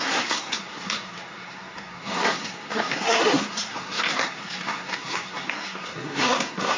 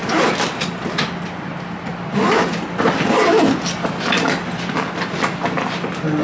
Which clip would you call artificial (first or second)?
first